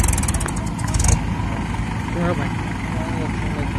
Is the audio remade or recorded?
recorded